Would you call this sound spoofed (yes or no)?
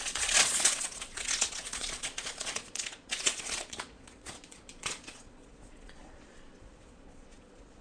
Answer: yes